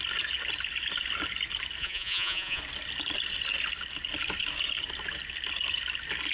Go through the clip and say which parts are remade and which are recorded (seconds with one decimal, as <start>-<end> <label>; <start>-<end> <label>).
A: 0.0-1.8 recorded; 1.8-2.6 remade; 2.6-6.3 recorded